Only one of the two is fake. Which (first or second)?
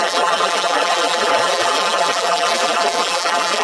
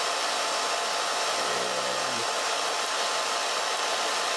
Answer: first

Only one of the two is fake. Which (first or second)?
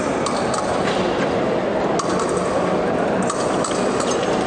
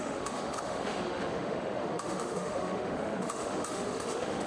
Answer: second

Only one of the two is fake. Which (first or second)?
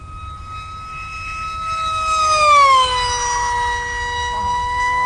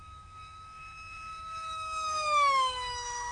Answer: second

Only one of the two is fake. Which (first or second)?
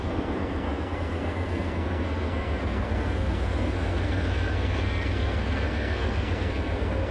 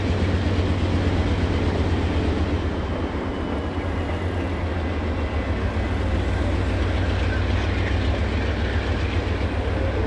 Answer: first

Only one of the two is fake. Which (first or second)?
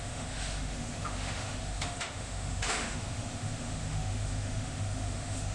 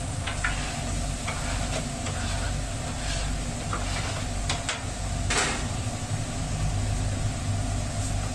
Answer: first